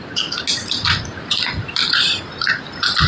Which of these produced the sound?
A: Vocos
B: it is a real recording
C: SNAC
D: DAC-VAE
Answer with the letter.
B